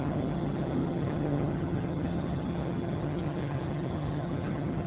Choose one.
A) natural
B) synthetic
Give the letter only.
B